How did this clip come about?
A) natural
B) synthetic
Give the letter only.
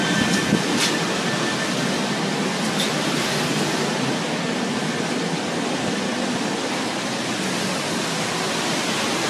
A